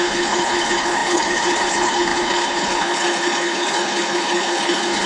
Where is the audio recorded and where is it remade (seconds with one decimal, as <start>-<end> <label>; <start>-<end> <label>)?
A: 0.0-5.1 remade